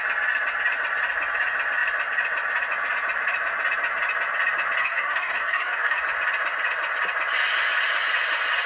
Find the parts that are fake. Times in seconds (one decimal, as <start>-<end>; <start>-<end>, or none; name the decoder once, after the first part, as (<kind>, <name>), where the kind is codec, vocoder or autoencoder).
4.8-6.0 (codec, DAC)